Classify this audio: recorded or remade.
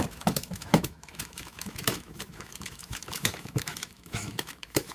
remade